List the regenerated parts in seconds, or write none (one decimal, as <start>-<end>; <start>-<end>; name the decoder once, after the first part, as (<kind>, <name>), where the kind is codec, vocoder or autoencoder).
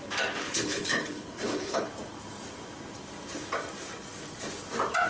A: 0.4-1.9 (codec, HILCodec)